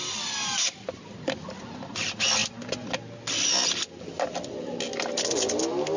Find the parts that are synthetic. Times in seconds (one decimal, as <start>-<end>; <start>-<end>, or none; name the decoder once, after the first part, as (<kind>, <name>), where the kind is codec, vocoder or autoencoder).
none